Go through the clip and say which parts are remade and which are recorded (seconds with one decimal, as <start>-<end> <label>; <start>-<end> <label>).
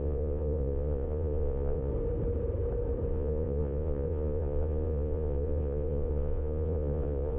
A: 0.0-1.9 remade; 1.9-3.1 recorded; 3.1-7.4 remade